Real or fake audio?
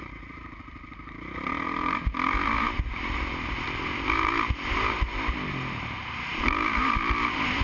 fake